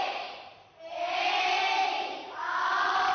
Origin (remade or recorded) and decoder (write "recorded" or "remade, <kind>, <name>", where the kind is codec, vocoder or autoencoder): recorded